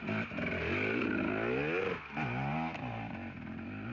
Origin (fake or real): real